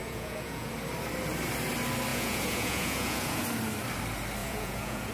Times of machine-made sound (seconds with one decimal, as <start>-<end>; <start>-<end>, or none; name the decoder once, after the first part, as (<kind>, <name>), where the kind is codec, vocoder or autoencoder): 0.0-0.7 (vocoder, Vocos); 2.1-3.4; 4.4-5.1